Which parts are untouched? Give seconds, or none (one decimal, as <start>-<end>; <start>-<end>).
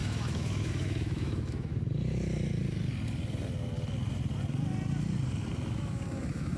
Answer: 1.7-5.7